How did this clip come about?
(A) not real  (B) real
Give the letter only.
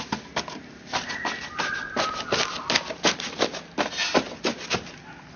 B